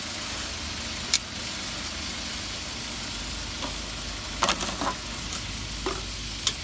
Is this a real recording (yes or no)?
yes